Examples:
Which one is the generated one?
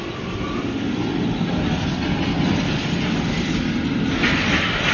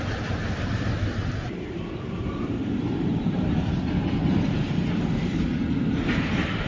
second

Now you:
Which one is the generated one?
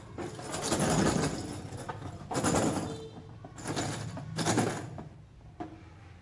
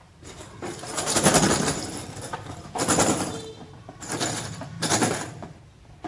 second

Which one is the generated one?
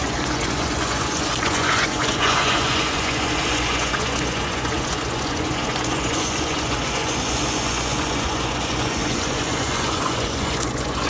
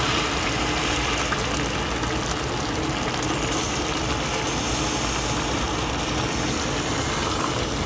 first